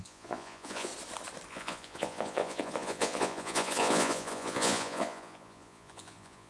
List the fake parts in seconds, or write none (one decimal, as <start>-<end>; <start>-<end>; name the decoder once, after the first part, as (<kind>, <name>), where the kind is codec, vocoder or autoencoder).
0.0-0.9 (vocoder, Vocos); 1.5-6.5